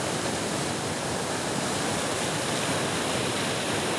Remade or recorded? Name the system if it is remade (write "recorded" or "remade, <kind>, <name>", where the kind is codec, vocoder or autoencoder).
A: remade, vocoder, BigVGAN v2